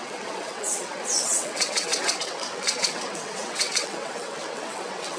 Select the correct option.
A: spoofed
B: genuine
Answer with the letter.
A